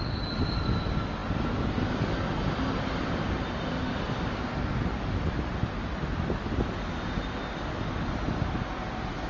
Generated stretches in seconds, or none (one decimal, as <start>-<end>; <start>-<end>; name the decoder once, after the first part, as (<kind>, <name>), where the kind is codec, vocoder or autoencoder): none